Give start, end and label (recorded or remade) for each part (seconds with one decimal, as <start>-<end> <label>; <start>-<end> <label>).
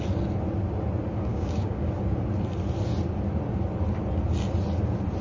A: 0.0-1.3 recorded; 1.3-1.9 remade; 1.9-5.2 recorded